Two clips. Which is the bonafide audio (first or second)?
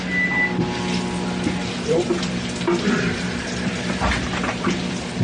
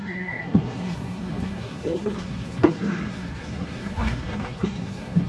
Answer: first